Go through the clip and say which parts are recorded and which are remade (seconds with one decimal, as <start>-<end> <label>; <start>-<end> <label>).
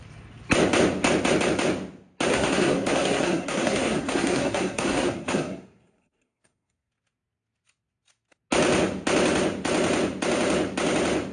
0.0-2.3 recorded; 2.3-6.9 remade; 6.9-11.3 recorded